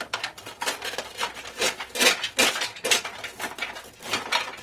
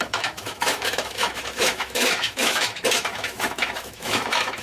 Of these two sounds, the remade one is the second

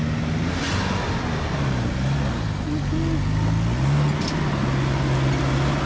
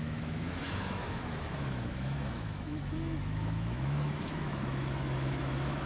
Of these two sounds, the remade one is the second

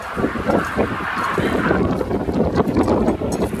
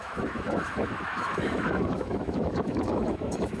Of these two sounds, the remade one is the second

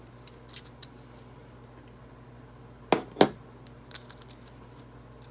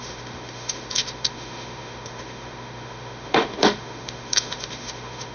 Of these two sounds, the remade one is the second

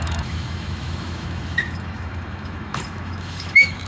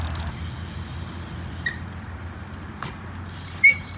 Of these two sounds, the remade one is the first